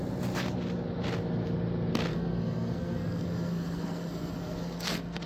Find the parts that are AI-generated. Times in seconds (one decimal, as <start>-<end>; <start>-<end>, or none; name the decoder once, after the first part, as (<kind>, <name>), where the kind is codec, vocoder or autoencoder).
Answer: 2.1-5.3 (codec, SNAC)